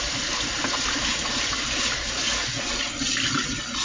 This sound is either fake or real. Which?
real